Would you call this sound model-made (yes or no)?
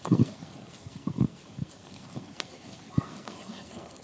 yes